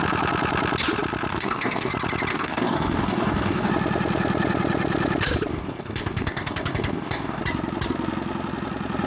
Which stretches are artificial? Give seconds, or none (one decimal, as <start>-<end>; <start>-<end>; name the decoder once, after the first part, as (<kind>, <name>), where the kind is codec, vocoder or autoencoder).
1.3-1.9 (codec, DAC); 2.3-3.7; 5.5-7.4